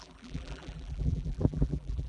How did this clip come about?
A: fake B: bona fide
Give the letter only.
A